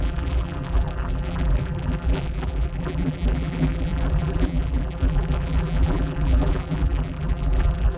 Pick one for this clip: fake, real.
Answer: fake